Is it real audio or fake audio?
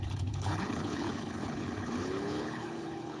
fake